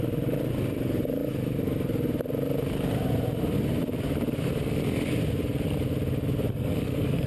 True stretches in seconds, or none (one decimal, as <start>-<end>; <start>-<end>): 0.0-6.5

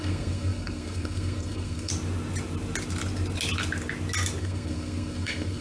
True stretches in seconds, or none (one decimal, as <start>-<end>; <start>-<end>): 1.9-4.4

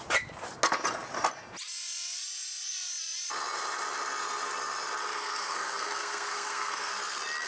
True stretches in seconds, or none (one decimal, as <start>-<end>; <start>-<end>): 0.0-5.1; 6.9-7.5

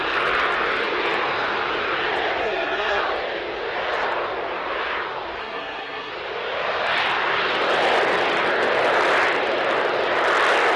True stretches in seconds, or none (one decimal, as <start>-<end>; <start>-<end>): 0.0-2.4; 3.0-5.4; 6.1-10.8

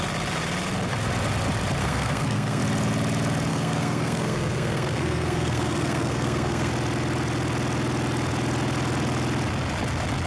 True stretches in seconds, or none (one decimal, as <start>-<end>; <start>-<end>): 0.0-1.8; 2.6-3.5; 6.7-10.3